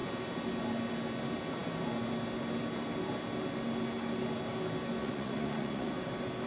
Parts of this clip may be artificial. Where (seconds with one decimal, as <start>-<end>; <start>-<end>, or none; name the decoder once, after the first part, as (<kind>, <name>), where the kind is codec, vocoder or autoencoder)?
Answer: 5.0-5.9 (vocoder, Vocos)